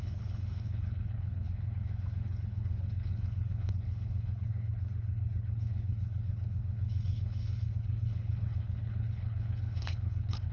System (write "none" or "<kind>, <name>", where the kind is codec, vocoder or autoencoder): codec, HILCodec